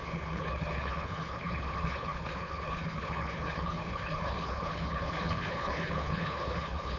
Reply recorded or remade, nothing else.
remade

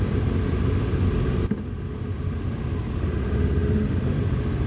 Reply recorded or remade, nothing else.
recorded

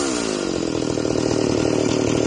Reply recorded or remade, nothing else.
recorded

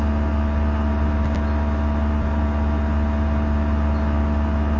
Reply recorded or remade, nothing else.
recorded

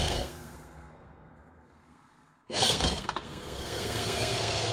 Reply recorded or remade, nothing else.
remade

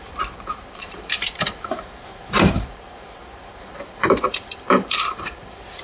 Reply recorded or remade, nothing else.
remade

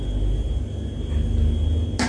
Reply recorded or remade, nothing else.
recorded